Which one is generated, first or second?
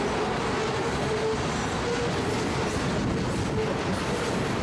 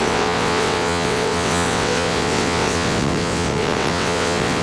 second